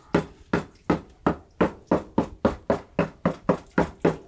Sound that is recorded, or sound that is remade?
recorded